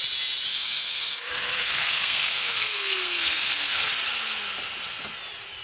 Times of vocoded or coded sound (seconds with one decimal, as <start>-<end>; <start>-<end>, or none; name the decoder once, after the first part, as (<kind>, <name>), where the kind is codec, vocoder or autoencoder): 0.5-3.9 (codec, SNAC)